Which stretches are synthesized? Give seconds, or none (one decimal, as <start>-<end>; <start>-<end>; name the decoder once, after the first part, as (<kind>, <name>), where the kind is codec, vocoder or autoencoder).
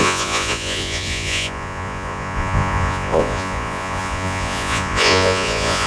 0.0-5.9 (vocoder, Vocos)